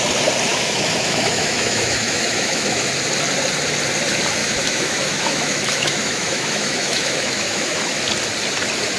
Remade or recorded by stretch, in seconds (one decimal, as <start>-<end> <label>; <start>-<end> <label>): 0.0-0.5 recorded; 0.5-2.9 remade; 2.9-4.4 recorded; 4.4-8.0 remade; 8.0-9.0 recorded